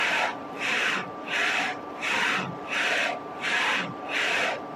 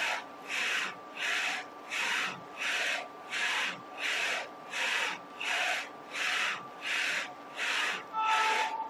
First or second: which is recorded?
second